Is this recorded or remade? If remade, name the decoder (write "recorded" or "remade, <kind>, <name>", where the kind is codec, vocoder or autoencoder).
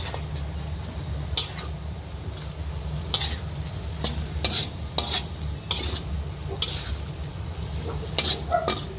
recorded